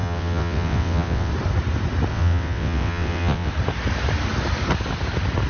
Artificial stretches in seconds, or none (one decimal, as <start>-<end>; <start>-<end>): 0.0-1.3; 2.1-3.5